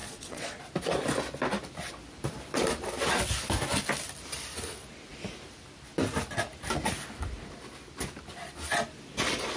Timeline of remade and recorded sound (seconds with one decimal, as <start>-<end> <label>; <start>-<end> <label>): 0.0-0.6 remade; 0.6-9.6 recorded